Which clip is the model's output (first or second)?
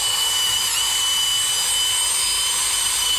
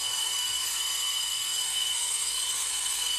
second